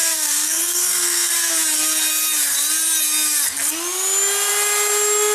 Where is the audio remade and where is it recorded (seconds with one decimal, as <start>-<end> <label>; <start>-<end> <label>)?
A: 0.0-1.3 remade; 1.3-5.3 recorded